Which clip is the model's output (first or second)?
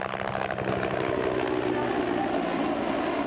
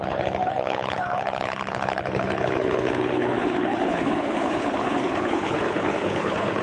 second